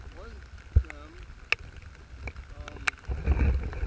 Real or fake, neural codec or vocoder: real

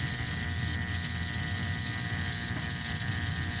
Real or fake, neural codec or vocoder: real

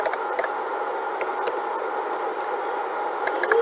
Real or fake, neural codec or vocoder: real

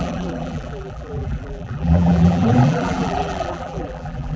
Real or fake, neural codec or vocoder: fake, vocoder, BigVGAN v2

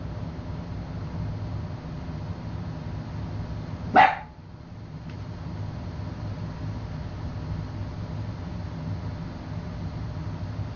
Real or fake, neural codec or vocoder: real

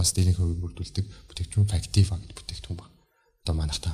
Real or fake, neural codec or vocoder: real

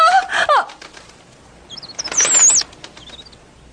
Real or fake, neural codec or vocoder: real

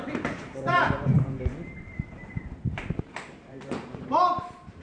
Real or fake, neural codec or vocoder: fake, vocoder, BigVGAN v2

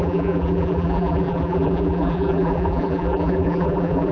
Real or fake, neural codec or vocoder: fake, vocoder, BigVGAN v2